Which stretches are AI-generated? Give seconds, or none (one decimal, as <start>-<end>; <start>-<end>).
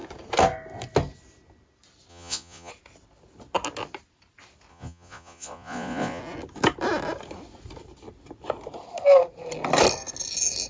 2.1-2.7; 4.7-6.2